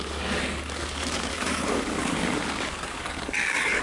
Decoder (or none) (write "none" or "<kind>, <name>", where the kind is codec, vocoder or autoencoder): codec, DAC